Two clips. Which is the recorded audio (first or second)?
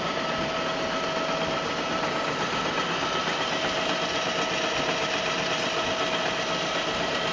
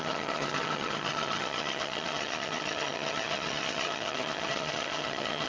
first